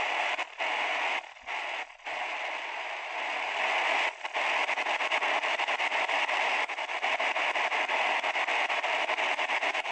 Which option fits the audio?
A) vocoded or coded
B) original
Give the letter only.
B